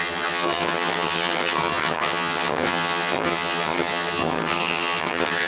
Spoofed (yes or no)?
yes